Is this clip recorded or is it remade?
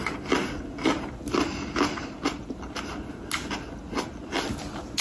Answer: recorded